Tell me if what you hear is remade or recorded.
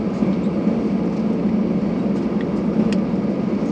recorded